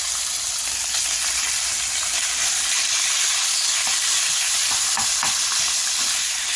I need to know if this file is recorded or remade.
recorded